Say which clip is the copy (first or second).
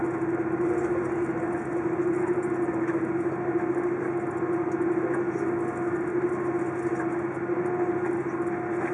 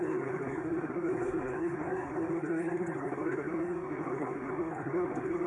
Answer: second